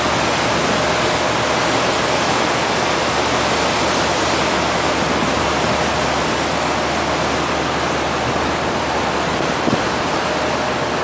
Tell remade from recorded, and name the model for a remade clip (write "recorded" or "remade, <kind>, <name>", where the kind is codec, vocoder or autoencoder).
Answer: recorded